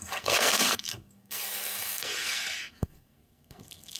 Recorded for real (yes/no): no